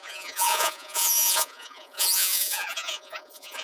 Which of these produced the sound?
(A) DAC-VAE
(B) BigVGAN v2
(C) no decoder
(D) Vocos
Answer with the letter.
D